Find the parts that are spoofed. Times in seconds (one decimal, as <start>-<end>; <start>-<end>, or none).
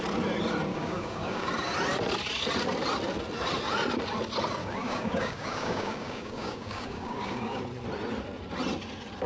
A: 0.7-1.5; 4.6-7.6